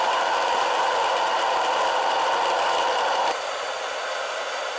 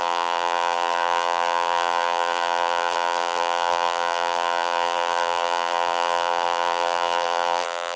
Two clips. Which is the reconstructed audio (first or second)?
second